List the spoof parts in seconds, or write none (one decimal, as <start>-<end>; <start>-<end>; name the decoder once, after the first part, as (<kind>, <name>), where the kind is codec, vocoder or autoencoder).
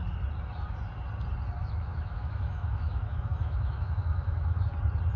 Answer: 1.6-4.7 (autoencoder, DAC-VAE)